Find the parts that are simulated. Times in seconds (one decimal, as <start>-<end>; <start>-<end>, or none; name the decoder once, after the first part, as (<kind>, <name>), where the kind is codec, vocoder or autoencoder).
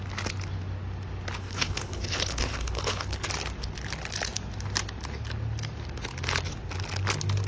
1.4-3.3 (codec, HILCodec)